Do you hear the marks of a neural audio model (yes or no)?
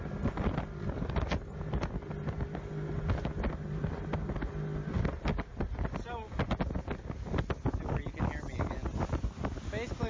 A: no